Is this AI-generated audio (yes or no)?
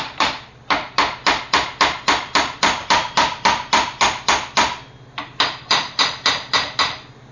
no